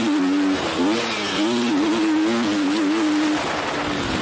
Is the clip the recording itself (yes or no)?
yes